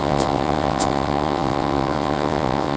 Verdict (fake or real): fake